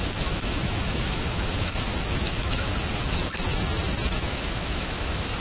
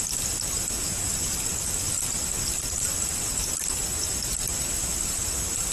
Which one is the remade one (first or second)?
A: first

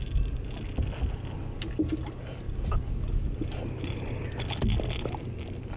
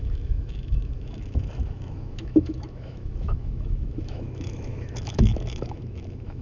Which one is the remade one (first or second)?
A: second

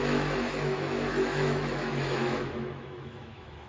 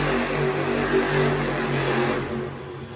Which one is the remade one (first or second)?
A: first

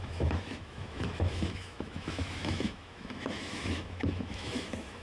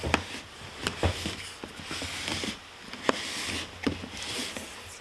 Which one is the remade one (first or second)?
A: first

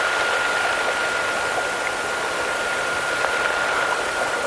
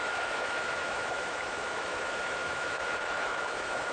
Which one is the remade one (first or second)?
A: second